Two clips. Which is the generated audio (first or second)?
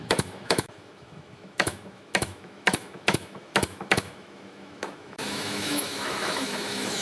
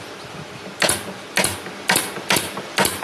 first